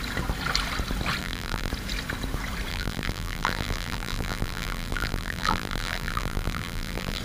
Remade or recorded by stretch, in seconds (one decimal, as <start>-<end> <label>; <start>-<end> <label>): 0.0-1.2 recorded; 1.2-1.7 remade; 1.7-2.7 recorded; 2.7-7.2 remade